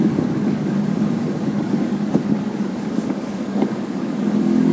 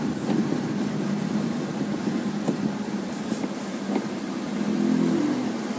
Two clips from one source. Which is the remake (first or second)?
first